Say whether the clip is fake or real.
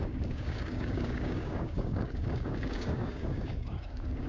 fake